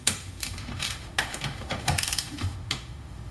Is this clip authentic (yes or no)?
no